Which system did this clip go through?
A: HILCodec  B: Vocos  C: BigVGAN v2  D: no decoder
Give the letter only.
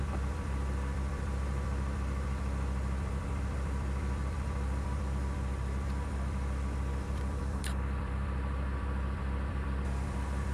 C